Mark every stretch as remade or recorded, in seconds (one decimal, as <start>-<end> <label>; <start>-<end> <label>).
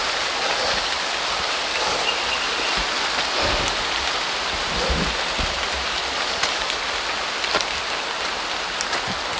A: 0.0-9.4 recorded